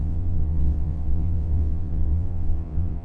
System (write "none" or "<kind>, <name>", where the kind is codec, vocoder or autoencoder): vocoder, WaveNeXt